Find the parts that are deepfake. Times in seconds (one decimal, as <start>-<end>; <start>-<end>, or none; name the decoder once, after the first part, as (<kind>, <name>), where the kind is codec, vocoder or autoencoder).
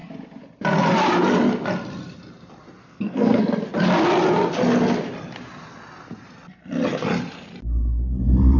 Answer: 2.8-3.4 (codec, SNAC)